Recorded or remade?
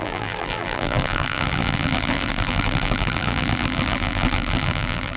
remade